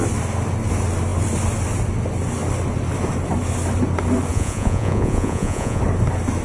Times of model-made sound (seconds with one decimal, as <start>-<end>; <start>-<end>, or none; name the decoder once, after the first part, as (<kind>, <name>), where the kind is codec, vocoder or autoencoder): 4.3-5.8 (vocoder, Vocos)